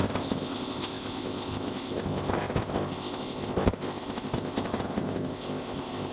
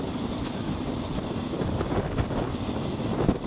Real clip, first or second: second